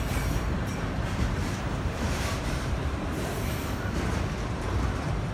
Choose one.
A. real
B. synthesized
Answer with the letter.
B